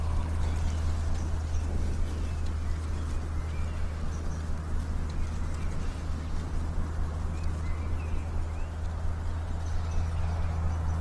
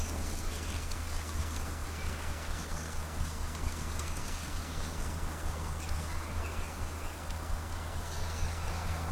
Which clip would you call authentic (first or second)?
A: first